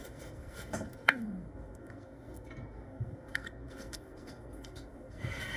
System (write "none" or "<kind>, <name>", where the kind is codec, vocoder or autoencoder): codec, SNAC